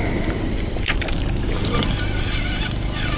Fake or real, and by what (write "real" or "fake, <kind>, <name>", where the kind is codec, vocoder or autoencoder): real